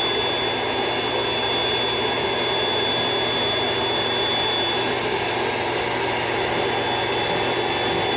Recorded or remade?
recorded